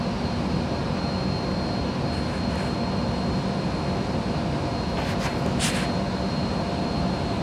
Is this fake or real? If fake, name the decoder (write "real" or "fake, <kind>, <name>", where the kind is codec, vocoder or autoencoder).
real